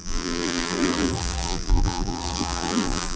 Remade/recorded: remade